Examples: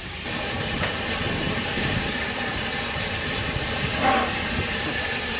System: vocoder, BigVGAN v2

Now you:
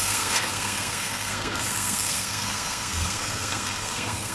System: codec, SNAC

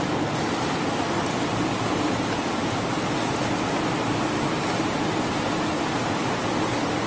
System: none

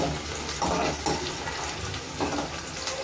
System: none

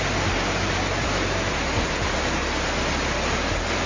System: none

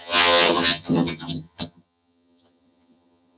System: vocoder, HiFi-GAN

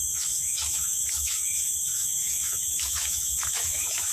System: autoencoder, DAC-VAE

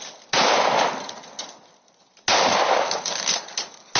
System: none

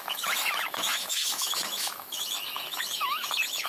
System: autoencoder, DAC-VAE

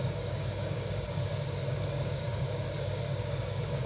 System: codec, DAC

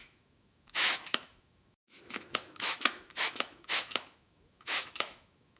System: autoencoder, DAC-VAE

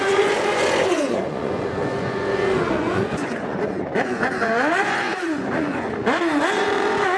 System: vocoder, Vocos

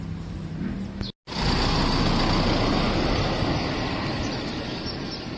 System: none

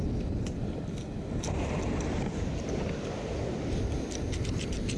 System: none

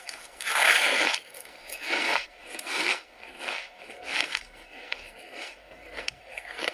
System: codec, SNAC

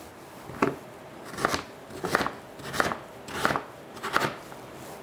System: none